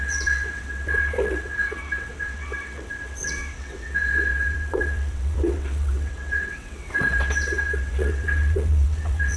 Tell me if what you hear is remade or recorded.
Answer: remade